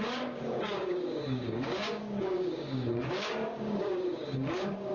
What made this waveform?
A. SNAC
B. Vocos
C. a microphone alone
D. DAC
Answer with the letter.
D